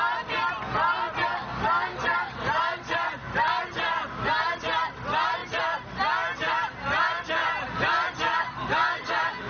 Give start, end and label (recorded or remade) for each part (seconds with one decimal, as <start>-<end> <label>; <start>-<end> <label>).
0.0-9.5 recorded